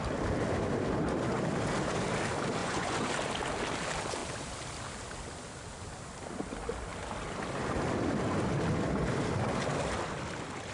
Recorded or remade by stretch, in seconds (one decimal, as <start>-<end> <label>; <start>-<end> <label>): 0.0-2.6 recorded; 2.6-3.1 remade; 3.1-10.7 recorded